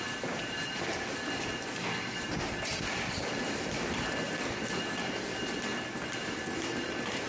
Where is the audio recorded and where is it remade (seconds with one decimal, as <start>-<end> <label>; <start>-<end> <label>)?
0.0-2.7 recorded; 2.7-7.3 remade